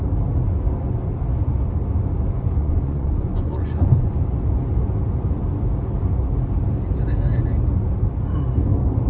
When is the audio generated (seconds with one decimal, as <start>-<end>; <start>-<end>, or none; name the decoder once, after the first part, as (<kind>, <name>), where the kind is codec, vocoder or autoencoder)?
2.6-4.2 (vocoder, Vocos)